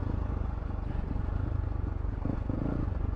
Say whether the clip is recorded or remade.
remade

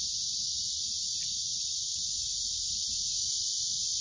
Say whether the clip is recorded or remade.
recorded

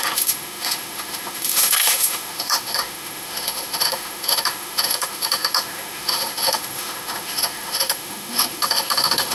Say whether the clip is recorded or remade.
remade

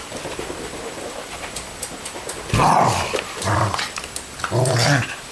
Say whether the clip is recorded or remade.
remade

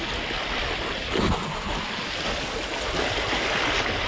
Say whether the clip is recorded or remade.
recorded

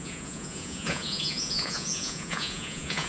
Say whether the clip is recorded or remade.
remade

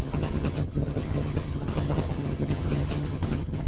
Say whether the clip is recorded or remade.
remade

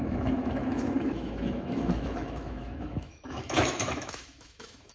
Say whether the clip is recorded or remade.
remade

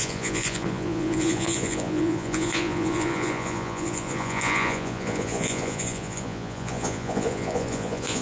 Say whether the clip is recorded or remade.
remade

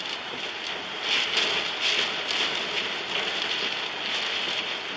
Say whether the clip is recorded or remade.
recorded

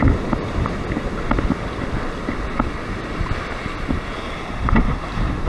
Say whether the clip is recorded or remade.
recorded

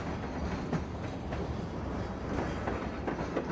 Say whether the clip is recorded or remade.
recorded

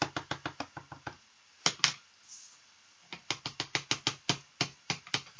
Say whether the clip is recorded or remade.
recorded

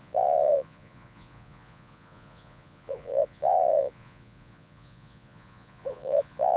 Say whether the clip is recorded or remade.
remade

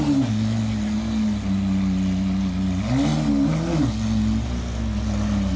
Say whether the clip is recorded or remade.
recorded